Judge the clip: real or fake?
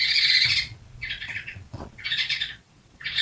fake